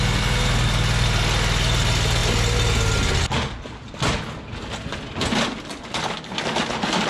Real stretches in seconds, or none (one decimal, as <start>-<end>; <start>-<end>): 0.0-7.1